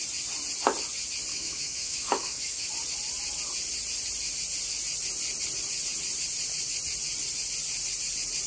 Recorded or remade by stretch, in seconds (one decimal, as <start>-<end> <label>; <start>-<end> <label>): 0.0-1.3 recorded; 1.3-2.7 remade; 2.7-8.5 recorded